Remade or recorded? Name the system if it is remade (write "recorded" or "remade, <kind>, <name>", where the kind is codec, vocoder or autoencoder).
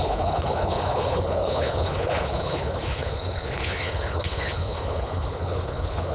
remade, codec, HILCodec